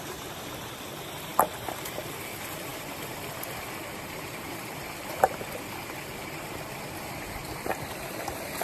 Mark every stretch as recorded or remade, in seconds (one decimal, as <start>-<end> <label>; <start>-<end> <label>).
0.0-1.3 remade; 1.3-1.9 recorded; 1.9-8.6 remade